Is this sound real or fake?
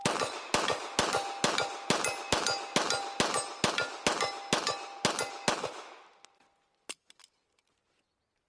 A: real